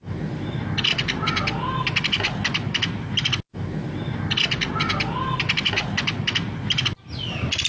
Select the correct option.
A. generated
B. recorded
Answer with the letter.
B